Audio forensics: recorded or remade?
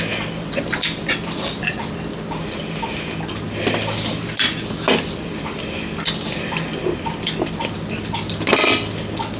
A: recorded